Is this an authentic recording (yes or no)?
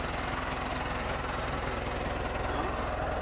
yes